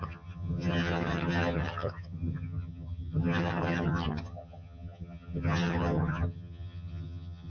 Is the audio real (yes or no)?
no